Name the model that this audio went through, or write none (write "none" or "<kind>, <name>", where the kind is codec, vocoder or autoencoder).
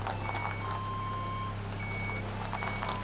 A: none